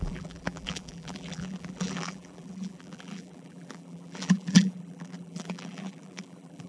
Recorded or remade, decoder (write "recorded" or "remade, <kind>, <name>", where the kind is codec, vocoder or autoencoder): remade, vocoder, BigVGAN v2